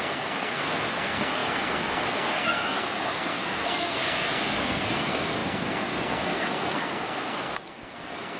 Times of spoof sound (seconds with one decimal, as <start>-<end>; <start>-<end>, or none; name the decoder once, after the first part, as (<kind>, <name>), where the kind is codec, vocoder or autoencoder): 0.0-8.4 (codec, SNAC)